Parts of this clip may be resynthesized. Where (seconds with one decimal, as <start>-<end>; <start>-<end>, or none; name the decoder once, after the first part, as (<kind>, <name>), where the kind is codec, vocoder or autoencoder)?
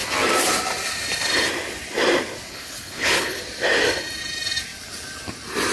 2.5-3.4 (codec, HILCodec)